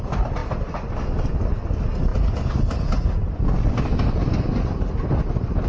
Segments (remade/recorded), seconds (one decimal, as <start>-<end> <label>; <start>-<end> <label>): 0.0-5.7 recorded